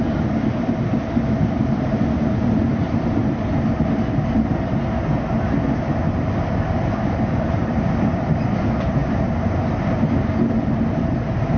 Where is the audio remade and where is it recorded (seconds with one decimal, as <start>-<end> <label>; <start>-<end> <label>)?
0.0-3.2 remade; 3.2-6.0 recorded; 6.0-9.0 remade; 9.0-11.6 recorded